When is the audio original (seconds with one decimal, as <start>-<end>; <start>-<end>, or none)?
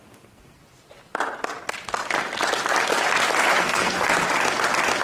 0.6-3.6; 4.1-5.0